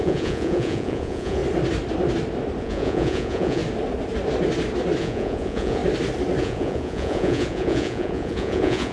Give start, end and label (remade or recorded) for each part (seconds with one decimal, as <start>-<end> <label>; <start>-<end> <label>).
0.0-1.4 remade; 1.4-2.6 recorded; 2.6-3.6 remade; 3.6-5.0 recorded; 5.0-5.8 remade; 5.8-6.4 recorded; 6.4-8.9 remade